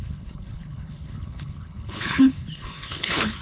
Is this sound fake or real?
fake